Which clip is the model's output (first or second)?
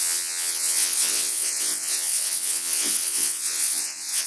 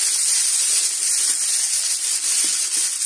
first